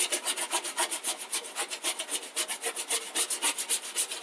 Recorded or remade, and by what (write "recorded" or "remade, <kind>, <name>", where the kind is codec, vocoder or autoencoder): recorded